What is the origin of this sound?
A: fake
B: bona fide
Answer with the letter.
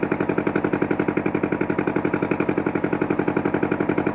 B